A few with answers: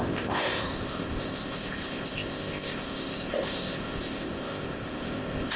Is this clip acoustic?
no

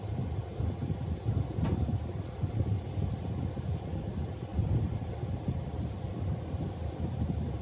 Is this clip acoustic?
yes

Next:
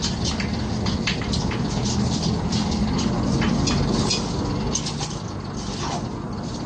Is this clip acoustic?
yes